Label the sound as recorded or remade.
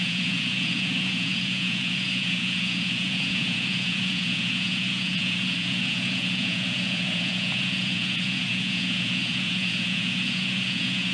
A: remade